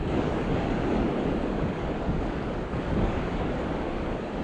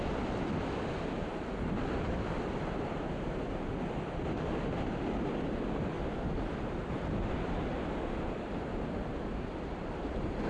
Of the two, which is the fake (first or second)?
first